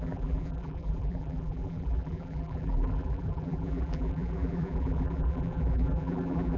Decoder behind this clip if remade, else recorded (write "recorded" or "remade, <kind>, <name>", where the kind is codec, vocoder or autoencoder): remade, vocoder, BigVGAN v2